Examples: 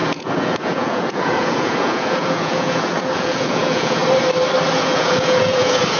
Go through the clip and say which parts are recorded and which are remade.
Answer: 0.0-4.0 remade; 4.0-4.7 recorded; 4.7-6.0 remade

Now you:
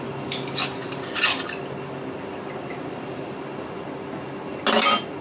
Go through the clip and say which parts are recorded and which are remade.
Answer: 0.0-5.2 recorded

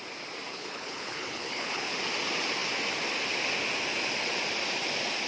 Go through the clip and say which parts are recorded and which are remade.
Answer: 0.0-0.5 recorded; 0.5-1.9 remade; 1.9-5.3 recorded

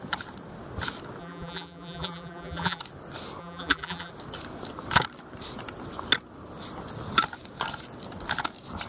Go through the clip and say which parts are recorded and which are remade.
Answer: 0.0-1.2 recorded; 1.2-2.8 remade; 2.8-3.4 recorded; 3.4-4.1 remade; 4.1-8.9 recorded